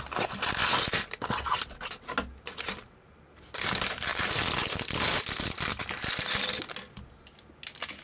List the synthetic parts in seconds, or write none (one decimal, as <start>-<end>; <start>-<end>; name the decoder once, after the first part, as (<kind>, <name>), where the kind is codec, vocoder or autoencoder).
none